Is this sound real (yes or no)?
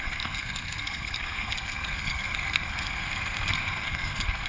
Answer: no